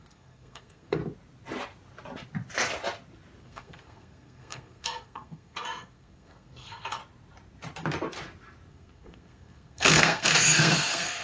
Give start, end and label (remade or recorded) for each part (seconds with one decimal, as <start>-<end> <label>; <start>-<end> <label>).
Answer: 0.0-1.0 remade; 1.0-3.4 recorded; 3.4-7.0 remade; 7.0-8.7 recorded; 8.7-11.2 remade